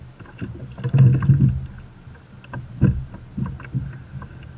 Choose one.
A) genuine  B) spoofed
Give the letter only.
A